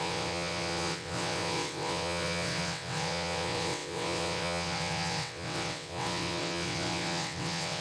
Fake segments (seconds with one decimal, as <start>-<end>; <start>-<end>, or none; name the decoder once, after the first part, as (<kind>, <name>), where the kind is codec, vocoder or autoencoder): 0.0-7.8 (vocoder, WaveNeXt)